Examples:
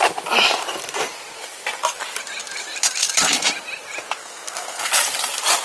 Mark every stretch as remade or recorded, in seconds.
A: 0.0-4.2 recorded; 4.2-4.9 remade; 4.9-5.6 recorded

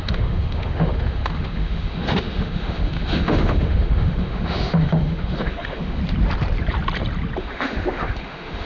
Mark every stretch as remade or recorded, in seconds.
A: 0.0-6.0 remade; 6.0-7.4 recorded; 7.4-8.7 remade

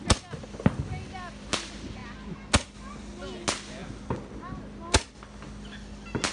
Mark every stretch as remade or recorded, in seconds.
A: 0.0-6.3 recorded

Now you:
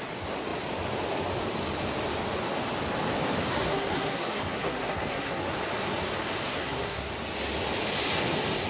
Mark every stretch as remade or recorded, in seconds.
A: 0.0-3.5 recorded; 3.5-5.5 remade; 5.5-6.5 recorded; 6.5-7.1 remade; 7.1-8.7 recorded

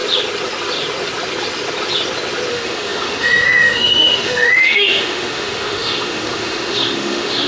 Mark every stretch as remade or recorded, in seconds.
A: 0.0-2.5 recorded; 2.5-7.5 remade